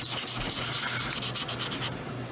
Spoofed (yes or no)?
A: no